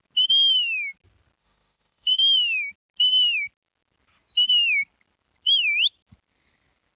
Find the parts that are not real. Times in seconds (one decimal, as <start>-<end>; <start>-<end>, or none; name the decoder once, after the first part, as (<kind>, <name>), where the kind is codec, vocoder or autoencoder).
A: 1.4-2.2 (autoencoder, DAC-VAE)

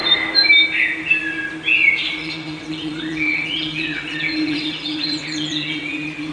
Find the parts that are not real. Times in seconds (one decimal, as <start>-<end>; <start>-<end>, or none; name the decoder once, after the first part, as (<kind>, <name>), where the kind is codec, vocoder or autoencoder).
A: 2.2-6.3 (vocoder, WaveNeXt)

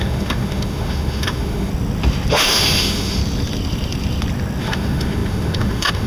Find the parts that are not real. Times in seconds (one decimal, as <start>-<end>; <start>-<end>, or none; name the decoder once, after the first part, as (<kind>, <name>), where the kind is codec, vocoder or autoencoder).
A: 0.0-1.7 (autoencoder, DAC-VAE); 2.3-3.2; 4.6-6.1

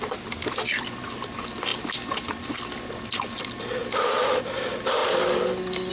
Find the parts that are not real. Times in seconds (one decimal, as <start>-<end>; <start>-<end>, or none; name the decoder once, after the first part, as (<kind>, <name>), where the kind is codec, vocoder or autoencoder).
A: none

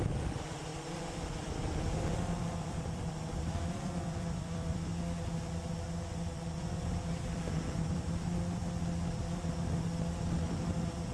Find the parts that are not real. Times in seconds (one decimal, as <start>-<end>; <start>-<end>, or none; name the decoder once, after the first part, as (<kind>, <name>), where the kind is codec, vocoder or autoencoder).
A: 0.0-4.9 (vocoder, BigVGAN v2); 6.6-8.6

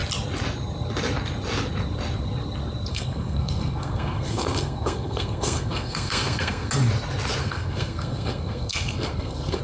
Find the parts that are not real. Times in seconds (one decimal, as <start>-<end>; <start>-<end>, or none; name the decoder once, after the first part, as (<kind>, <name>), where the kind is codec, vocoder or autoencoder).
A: 2.9-6.7 (codec, SNAC); 7.4-9.6

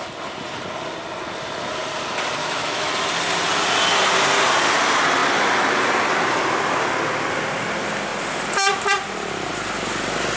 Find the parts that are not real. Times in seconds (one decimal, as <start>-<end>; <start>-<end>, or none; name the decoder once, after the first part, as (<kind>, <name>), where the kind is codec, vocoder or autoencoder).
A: 2.4-2.9 (autoencoder, DAC-VAE)